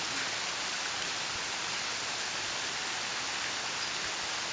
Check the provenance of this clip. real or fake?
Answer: real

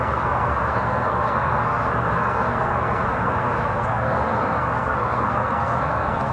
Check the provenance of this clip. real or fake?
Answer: fake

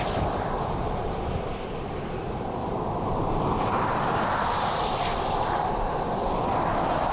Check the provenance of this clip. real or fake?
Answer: real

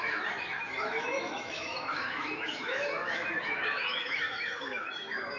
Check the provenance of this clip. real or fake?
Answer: fake